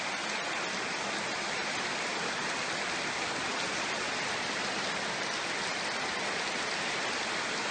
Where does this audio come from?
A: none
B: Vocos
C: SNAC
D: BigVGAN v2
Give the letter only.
A